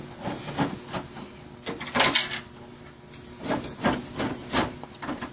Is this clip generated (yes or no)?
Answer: no